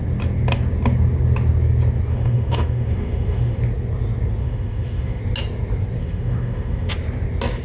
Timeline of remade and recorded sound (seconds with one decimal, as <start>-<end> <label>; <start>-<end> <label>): 0.0-2.1 recorded; 2.1-3.6 remade; 3.6-4.4 recorded; 4.4-5.2 remade; 5.2-6.0 recorded; 6.0-6.9 remade; 6.9-7.6 recorded